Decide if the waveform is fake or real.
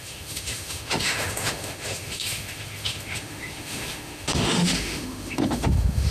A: fake